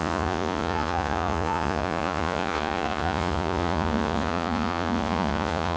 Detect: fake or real fake